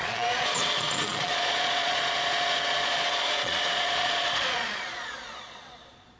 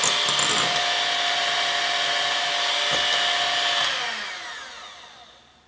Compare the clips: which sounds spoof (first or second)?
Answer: first